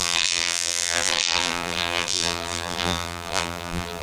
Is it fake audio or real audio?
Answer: fake